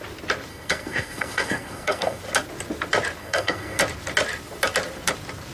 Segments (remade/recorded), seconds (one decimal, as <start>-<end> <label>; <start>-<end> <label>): 0.0-0.5 recorded; 0.5-2.2 remade; 2.2-3.2 recorded; 3.2-3.8 remade; 3.8-5.5 recorded